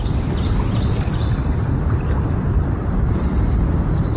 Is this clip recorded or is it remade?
recorded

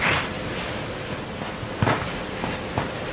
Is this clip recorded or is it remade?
recorded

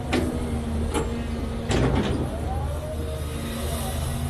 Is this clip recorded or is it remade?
recorded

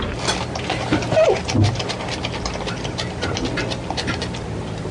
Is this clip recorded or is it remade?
recorded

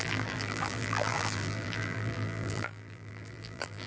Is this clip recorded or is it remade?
remade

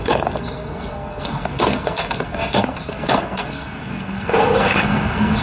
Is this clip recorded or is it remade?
remade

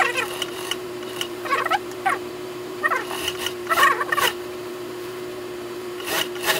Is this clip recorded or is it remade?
remade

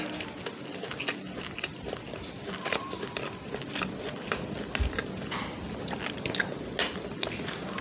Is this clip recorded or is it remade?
recorded